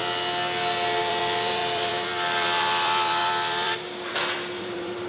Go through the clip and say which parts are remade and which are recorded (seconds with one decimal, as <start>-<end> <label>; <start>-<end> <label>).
0.0-1.0 recorded; 1.0-5.1 remade

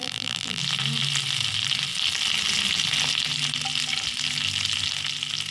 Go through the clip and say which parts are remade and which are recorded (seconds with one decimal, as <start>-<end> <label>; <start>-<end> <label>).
0.0-0.6 remade; 0.6-5.5 recorded

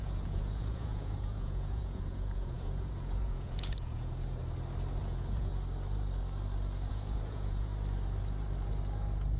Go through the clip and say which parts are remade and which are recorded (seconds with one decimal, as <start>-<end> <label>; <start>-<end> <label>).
0.0-4.4 remade; 4.4-5.0 recorded; 5.0-5.5 remade; 5.5-6.9 recorded; 6.9-7.7 remade; 7.7-9.4 recorded

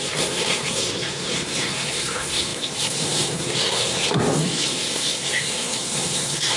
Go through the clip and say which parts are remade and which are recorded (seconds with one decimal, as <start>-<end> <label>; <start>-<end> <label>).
0.0-6.6 remade

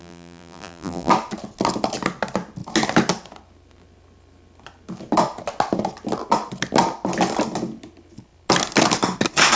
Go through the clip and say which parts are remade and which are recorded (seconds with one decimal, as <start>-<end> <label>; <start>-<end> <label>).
0.0-1.1 remade; 1.1-9.6 recorded

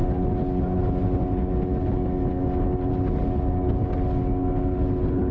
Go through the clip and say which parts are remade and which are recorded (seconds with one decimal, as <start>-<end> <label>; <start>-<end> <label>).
0.0-5.3 recorded

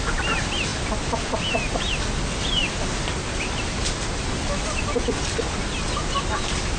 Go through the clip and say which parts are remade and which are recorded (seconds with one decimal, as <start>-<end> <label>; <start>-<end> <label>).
0.0-6.8 recorded